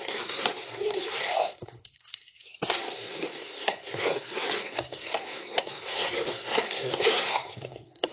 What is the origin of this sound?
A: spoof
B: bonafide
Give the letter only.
A